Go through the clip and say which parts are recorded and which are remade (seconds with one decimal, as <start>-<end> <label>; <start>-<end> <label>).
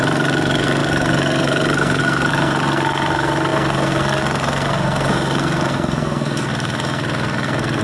0.0-7.8 remade